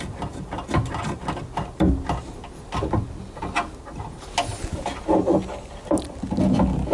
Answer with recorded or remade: recorded